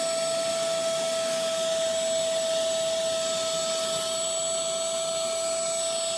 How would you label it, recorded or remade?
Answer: recorded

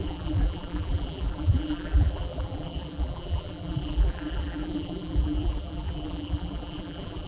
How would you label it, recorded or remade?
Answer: remade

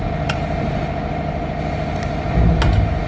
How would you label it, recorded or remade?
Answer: recorded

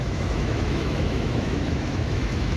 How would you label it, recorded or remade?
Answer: remade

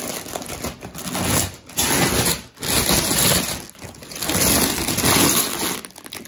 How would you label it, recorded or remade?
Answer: recorded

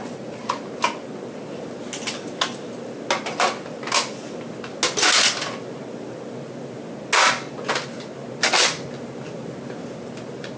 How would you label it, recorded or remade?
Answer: recorded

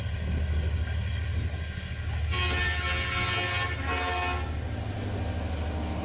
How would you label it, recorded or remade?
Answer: recorded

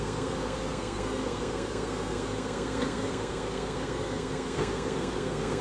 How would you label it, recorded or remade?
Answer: remade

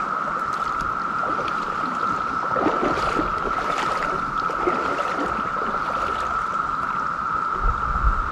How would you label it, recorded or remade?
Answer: recorded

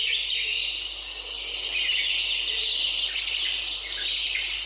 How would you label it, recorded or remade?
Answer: recorded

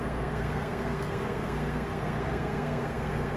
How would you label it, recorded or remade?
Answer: remade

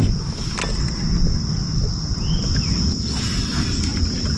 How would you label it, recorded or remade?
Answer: recorded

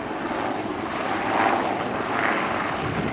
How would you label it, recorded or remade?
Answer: recorded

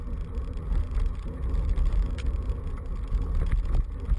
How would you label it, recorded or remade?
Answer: recorded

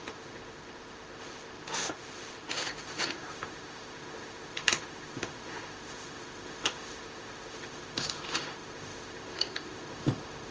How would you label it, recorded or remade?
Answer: remade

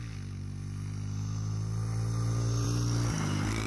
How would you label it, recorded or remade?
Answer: recorded